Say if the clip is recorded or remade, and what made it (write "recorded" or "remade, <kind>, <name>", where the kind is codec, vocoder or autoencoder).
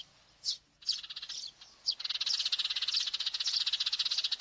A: recorded